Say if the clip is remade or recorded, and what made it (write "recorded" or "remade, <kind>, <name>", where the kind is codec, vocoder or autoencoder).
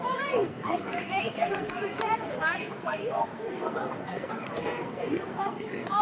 remade, codec, SNAC